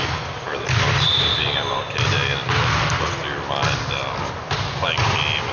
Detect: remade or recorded recorded